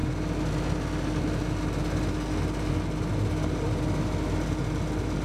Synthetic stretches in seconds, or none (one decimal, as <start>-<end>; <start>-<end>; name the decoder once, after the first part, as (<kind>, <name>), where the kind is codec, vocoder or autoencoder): none